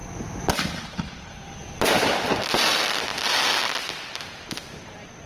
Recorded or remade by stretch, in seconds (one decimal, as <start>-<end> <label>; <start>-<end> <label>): 0.0-5.3 recorded

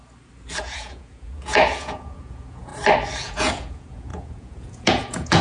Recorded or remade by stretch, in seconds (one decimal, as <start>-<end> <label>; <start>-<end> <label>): 0.0-0.6 recorded; 0.6-2.7 remade; 2.7-3.2 recorded; 3.2-5.4 remade

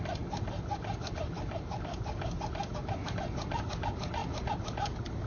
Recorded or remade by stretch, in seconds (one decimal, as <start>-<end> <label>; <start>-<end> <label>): 0.0-5.3 recorded

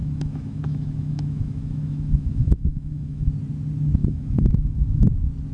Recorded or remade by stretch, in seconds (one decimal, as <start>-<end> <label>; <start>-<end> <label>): 0.0-3.3 remade; 3.3-4.0 recorded; 4.0-5.1 remade; 5.1-5.5 recorded

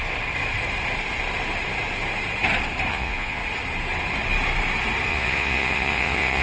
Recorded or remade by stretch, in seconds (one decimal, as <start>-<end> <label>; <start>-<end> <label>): 0.0-2.9 recorded; 2.9-3.4 remade; 3.4-5.1 recorded; 5.1-6.4 remade